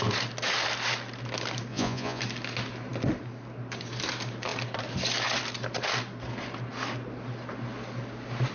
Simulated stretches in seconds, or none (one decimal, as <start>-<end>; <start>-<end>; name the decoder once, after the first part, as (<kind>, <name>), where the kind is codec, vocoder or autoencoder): 1.7-2.2 (vocoder, Vocos)